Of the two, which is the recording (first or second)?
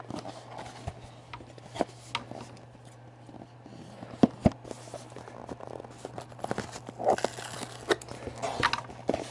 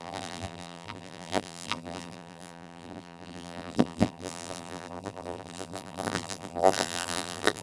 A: first